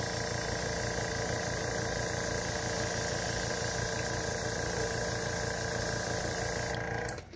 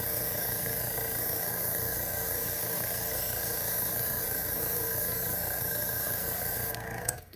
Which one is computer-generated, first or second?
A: second